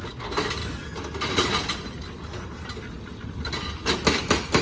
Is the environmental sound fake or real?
real